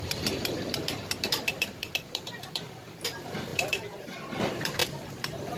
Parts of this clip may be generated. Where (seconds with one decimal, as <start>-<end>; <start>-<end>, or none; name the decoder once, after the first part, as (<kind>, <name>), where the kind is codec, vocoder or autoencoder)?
0.0-5.6 (vocoder, BigVGAN v2)